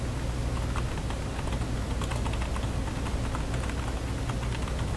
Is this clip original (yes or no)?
yes